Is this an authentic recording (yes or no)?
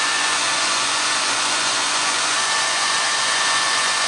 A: no